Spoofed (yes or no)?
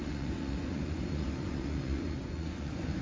yes